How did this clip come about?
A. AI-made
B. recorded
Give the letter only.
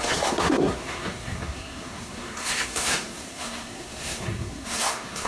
A